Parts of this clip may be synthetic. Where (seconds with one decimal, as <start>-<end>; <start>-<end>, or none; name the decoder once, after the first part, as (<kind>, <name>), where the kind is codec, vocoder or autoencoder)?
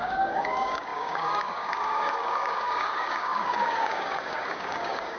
0.0-5.2 (codec, DAC)